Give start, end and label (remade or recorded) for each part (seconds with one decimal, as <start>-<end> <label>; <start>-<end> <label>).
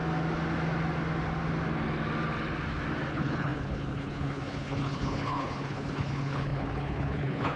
0.0-3.1 recorded; 3.1-7.6 remade